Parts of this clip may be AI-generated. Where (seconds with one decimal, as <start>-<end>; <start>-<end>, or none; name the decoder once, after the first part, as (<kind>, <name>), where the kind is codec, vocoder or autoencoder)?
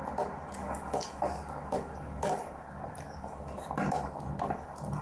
0.6-3.6 (codec, DAC)